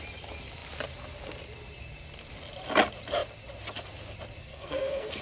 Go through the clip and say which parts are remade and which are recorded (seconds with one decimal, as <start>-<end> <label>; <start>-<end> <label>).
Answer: 0.0-4.4 recorded; 4.4-5.2 remade